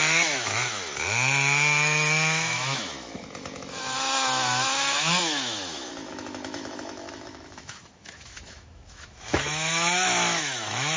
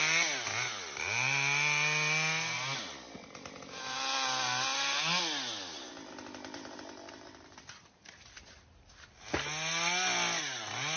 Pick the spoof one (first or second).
first